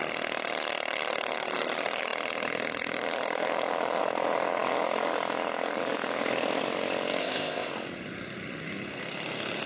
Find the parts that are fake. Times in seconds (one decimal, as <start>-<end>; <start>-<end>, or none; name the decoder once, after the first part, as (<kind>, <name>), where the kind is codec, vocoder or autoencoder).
7.2-7.7 (codec, ZipCodec)